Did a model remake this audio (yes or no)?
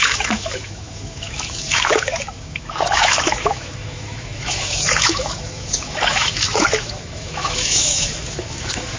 yes